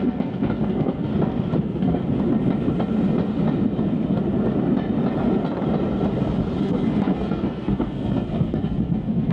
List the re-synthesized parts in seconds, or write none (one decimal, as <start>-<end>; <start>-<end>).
0.0-1.1; 1.6-2.0; 6.6-9.3